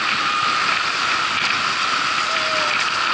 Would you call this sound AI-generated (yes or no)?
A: no